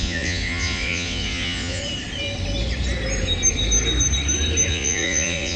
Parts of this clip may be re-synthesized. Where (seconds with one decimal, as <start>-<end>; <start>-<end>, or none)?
0.0-1.8; 4.7-5.6